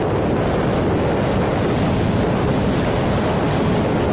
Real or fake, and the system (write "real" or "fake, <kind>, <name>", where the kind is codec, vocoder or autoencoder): real